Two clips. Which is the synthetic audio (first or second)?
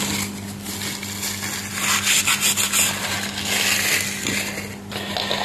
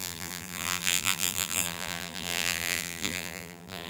second